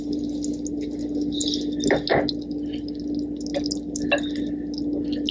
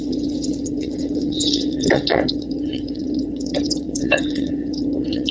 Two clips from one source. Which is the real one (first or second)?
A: first